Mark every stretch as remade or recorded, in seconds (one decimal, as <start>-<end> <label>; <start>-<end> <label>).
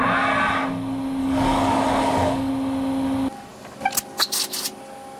0.0-1.2 recorded; 1.2-2.5 remade; 2.5-5.2 recorded